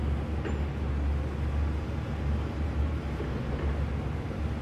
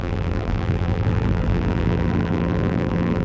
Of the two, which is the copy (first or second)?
second